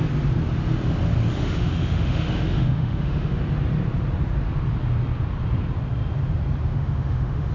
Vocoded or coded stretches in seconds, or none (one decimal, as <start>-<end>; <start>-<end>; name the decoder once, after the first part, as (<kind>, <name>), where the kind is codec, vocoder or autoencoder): 1.3-3.4 (autoencoder, DAC-VAE); 6.7-7.5